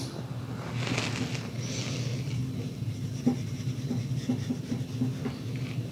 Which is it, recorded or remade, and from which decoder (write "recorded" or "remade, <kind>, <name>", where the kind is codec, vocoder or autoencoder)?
recorded